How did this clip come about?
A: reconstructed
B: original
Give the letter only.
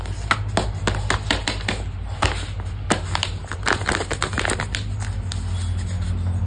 B